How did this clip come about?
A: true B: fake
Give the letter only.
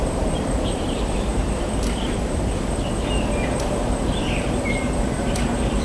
B